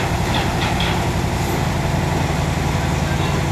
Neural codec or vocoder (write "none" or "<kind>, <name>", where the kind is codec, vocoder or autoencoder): none